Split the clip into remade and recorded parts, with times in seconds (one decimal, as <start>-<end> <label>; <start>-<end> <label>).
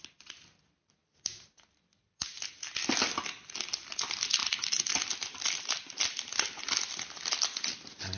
0.0-8.2 recorded